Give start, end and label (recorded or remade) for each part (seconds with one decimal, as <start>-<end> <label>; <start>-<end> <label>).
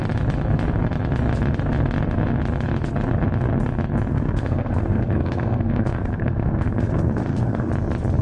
0.0-4.1 recorded; 4.1-7.7 remade; 7.7-8.2 recorded